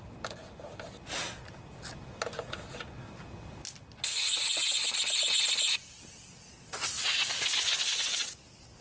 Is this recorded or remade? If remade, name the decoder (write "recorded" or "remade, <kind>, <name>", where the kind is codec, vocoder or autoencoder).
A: recorded